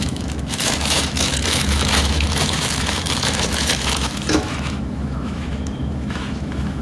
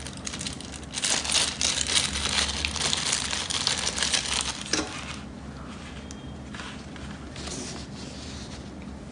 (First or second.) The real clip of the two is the second